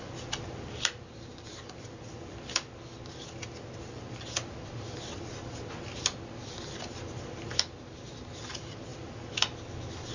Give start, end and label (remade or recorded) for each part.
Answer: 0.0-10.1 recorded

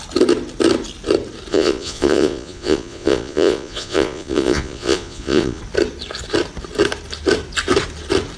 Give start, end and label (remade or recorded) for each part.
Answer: 0.0-1.5 recorded; 1.5-5.6 remade; 5.6-8.4 recorded

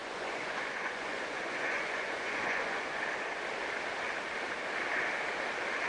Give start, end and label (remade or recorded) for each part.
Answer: 0.0-3.0 remade; 3.0-5.9 recorded

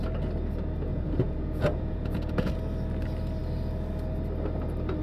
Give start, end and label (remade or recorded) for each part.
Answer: 0.0-0.9 recorded; 0.9-2.5 remade; 2.5-5.0 recorded